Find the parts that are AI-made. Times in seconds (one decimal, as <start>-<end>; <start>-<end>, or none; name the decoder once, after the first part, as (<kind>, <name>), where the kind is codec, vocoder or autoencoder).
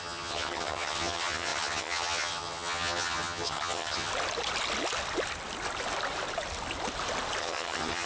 0.0-4.1 (vocoder, HiFi-GAN); 7.4-8.1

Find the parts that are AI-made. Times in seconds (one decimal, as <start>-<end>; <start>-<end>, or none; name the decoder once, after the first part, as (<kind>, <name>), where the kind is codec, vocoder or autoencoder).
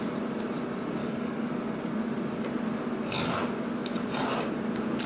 1.0-1.5 (codec, DAC)